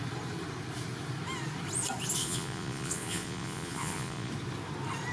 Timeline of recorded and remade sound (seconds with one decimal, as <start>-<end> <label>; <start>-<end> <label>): 0.0-2.2 recorded; 2.2-4.3 remade; 4.3-5.1 recorded

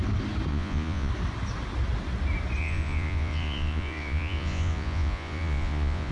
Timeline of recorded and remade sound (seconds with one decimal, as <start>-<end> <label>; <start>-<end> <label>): 0.0-0.5 recorded; 0.5-1.1 remade; 1.1-2.6 recorded; 2.6-6.1 remade

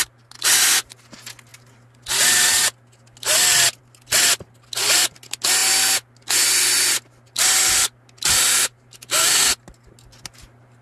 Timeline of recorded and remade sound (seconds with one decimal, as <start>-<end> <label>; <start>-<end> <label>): 0.0-10.8 recorded